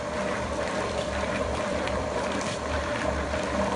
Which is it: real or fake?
fake